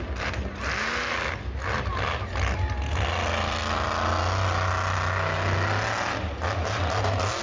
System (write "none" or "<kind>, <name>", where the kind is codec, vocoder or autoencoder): none